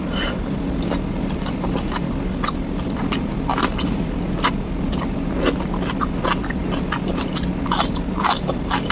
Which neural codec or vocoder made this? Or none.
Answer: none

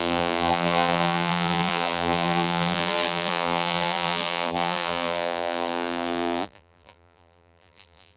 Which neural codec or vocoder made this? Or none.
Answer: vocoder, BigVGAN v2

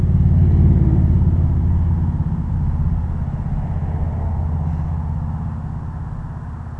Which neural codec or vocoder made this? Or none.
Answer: none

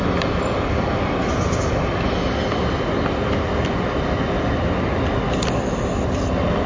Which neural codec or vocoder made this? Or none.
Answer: none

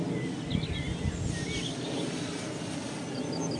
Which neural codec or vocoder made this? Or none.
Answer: none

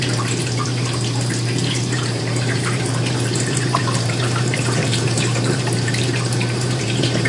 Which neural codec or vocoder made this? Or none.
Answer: vocoder, BigVGAN v2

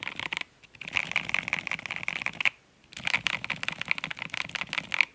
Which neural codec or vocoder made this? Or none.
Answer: none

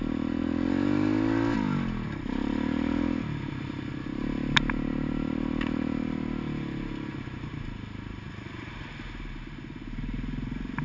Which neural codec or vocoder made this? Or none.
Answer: none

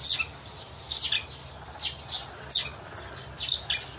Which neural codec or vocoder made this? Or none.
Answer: none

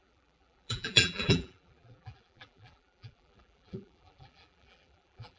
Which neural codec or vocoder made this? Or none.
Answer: vocoder, BigVGAN v2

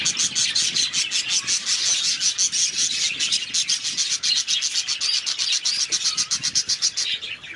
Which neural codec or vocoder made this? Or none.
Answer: none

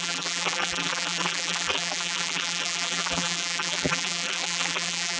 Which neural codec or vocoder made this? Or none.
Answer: vocoder, BigVGAN v2